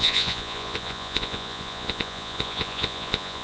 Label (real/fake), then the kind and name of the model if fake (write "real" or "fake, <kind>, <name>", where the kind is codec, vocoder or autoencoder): fake, vocoder, Vocos